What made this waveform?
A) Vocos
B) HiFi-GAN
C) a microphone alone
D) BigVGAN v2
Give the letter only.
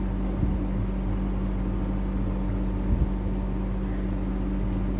C